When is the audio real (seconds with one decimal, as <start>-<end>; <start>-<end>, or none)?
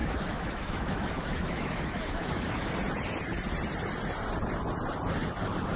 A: 2.7-5.8